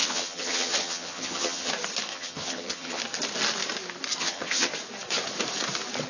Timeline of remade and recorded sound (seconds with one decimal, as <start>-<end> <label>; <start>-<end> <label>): 0.0-1.7 remade; 1.7-2.1 recorded; 2.1-3.0 remade; 3.0-4.2 recorded; 4.2-4.7 remade; 4.7-6.1 recorded